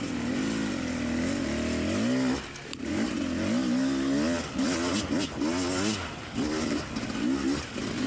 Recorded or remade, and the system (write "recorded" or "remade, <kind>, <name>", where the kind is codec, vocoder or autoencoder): recorded